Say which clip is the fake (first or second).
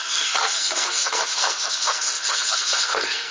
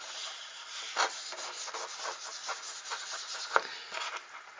first